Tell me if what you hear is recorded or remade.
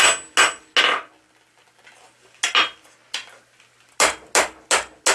recorded